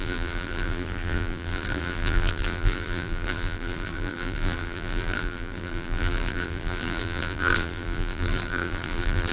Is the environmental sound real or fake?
fake